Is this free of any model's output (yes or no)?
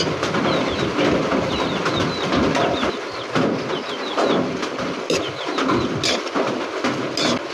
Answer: yes